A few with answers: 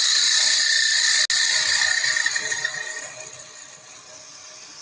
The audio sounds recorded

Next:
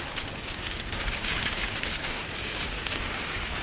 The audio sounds remade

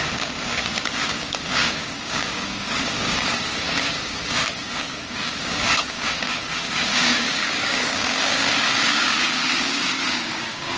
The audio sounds remade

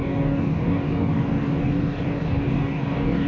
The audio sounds remade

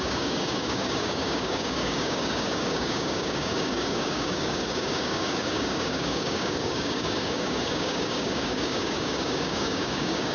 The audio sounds remade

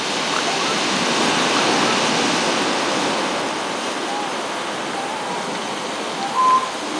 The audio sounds recorded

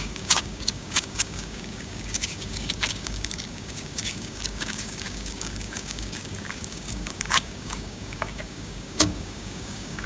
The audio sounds remade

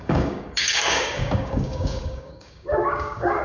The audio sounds remade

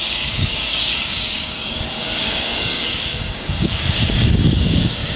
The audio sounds remade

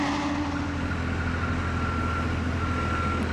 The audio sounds recorded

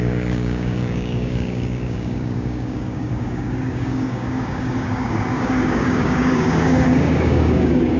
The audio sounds remade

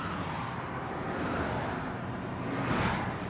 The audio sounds recorded